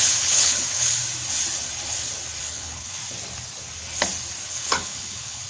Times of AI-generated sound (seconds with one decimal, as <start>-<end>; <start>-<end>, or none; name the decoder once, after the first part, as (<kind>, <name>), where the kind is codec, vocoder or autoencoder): 0.0-1.0 (codec, HILCodec); 2.4-3.0; 4.5-5.5